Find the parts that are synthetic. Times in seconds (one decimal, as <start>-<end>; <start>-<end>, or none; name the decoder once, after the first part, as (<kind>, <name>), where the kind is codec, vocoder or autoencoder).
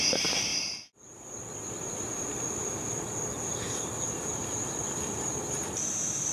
none